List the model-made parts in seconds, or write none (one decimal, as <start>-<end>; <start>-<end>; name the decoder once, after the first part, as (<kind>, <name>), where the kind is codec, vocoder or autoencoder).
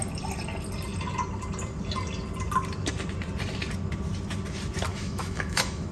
4.9-5.9 (autoencoder, DAC-VAE)